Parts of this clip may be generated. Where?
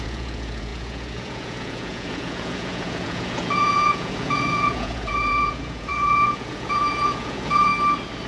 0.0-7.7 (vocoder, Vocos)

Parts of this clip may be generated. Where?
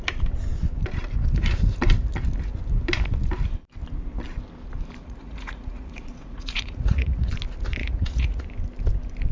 5.0-7.3 (vocoder, Vocos); 7.8-8.4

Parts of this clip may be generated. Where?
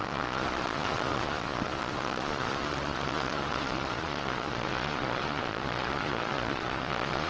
0.0-7.3 (vocoder, Vocos)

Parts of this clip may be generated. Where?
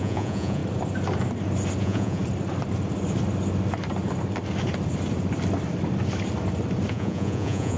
0.0-0.6 (vocoder, Vocos); 1.8-2.2; 6.9-7.8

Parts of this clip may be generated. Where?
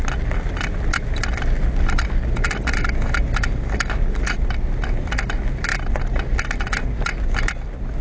none